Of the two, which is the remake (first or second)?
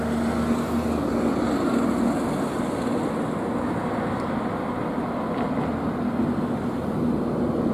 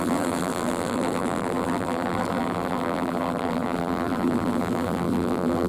second